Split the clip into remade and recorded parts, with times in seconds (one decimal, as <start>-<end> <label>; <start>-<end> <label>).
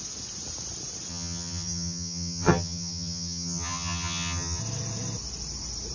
0.0-1.1 recorded; 1.1-4.6 remade; 4.6-5.9 recorded